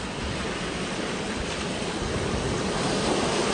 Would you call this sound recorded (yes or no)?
yes